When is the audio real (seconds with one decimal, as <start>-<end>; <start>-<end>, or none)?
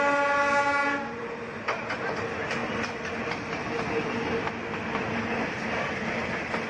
0.0-6.7